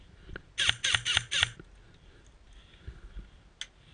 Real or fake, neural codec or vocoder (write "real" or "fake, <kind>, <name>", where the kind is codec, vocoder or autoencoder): real